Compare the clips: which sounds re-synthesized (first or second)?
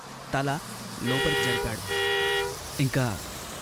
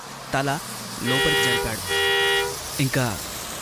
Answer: first